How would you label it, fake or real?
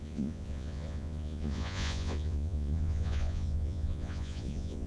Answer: fake